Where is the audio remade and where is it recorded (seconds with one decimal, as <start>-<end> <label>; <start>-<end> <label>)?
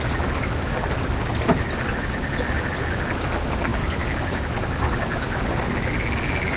0.0-6.6 recorded